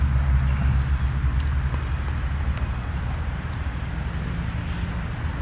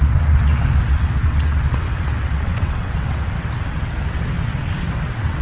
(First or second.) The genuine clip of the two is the first